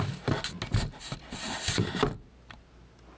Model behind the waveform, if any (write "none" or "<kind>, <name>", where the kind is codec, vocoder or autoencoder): none